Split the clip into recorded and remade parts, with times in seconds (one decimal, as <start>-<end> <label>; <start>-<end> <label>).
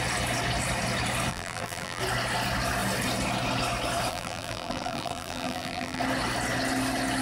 0.0-1.3 recorded; 1.3-2.0 remade; 2.0-4.1 recorded; 4.1-6.0 remade; 6.0-7.2 recorded